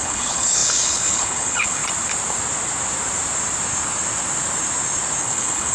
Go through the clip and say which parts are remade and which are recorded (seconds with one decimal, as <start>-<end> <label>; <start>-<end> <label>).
0.0-1.8 remade; 1.8-5.2 recorded; 5.2-5.7 remade